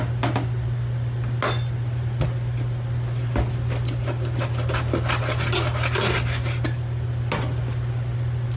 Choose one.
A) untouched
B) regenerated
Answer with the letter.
A